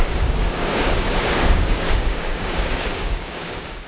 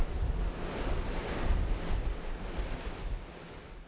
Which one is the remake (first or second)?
first